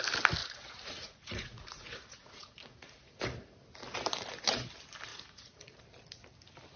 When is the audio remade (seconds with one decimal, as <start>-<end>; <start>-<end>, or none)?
0.4-3.2; 5.1-5.8